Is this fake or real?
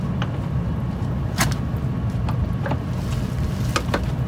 real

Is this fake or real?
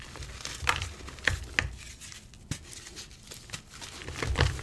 real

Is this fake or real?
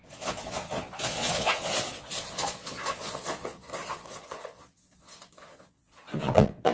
fake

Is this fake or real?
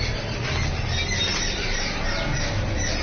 real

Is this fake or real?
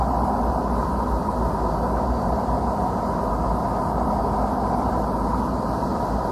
real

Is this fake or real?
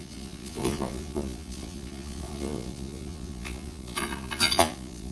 fake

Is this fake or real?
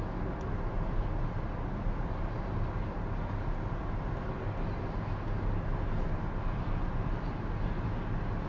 real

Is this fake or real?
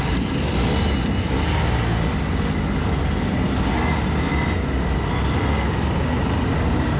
real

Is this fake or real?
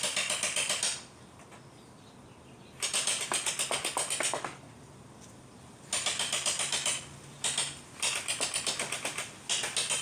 real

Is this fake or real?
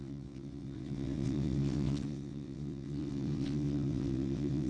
fake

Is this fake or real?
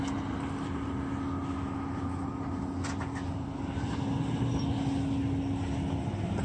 real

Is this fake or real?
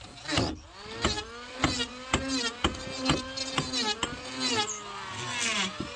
real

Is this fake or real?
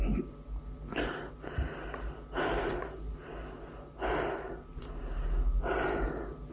real